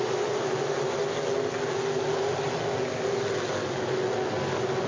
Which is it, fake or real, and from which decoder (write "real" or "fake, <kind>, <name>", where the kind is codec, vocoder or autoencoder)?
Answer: real